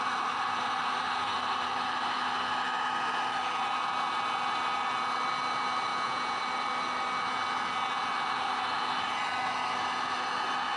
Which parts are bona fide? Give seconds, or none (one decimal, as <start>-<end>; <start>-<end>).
0.0-5.9; 6.4-10.8